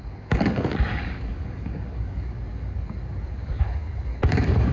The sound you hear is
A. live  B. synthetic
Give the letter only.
B